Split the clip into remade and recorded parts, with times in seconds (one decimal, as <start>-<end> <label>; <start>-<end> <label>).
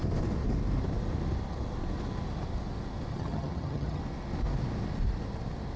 0.0-3.1 recorded; 3.1-4.0 remade; 4.0-5.8 recorded